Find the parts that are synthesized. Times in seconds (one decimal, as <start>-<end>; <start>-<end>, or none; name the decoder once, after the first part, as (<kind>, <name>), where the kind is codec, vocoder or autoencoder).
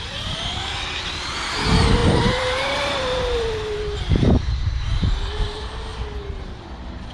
0.0-5.9 (vocoder, BigVGAN v2); 6.4-7.1